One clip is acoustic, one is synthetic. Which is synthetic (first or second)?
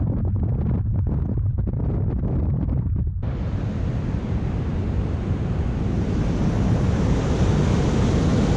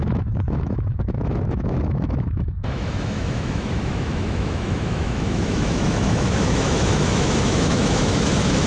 second